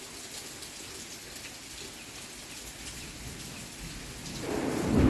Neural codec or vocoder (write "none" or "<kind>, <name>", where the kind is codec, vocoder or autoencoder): none